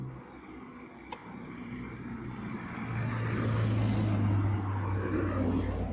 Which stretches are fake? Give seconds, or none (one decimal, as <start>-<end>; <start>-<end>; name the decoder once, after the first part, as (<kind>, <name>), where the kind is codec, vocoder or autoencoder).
1.2-2.6 (vocoder, BigVGAN v2)